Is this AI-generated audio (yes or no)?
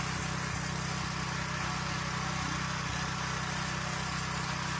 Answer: no